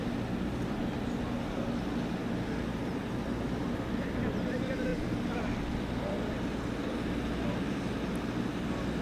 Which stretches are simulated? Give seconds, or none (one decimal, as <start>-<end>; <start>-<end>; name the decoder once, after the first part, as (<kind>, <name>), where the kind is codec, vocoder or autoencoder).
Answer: none